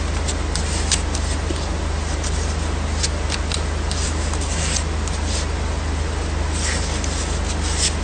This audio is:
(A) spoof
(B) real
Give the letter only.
B